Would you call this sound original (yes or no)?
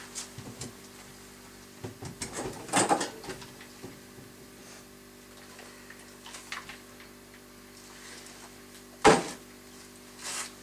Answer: yes